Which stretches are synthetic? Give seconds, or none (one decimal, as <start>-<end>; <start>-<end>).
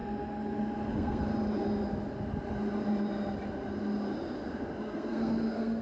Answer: 0.9-1.3; 4.8-5.8